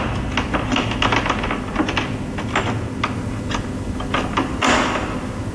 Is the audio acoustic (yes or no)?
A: yes